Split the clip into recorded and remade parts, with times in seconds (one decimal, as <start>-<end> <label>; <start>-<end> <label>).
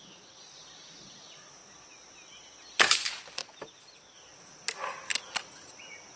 0.0-6.2 recorded